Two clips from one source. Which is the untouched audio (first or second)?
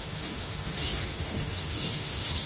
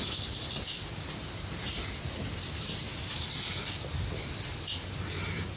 second